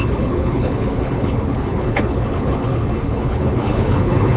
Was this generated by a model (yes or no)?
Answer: yes